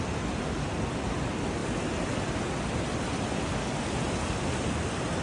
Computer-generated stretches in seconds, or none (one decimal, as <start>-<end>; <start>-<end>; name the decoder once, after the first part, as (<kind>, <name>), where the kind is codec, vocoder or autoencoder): none